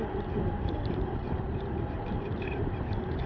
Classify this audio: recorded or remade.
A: remade